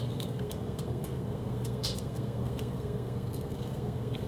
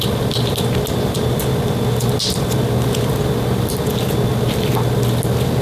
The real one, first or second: second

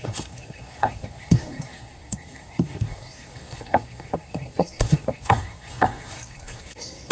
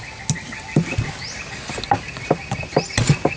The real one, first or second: second